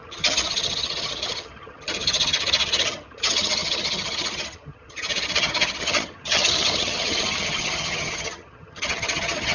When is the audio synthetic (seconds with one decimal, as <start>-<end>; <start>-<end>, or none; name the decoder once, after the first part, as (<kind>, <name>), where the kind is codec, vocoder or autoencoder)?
0.0-9.5 (vocoder, HiFi-GAN)